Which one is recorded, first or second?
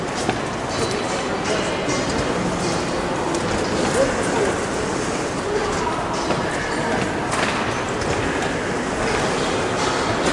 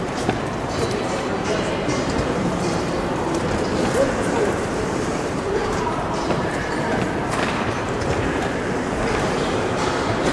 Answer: first